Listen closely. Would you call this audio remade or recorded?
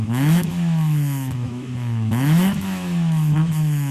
remade